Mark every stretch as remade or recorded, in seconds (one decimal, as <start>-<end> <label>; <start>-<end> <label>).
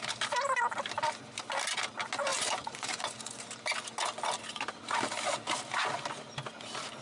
0.0-2.3 recorded; 2.3-3.4 remade; 3.4-7.0 recorded